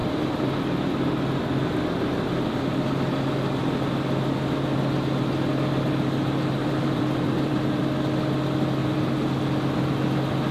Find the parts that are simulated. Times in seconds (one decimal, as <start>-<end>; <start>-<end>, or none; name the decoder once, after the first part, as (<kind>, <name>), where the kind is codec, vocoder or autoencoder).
6.6-7.8 (vocoder, BigVGAN v2); 8.8-9.3